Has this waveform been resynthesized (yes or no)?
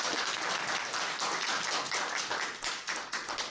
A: no